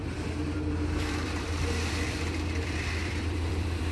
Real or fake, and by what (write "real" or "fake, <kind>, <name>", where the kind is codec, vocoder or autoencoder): fake, vocoder, BigVGAN v2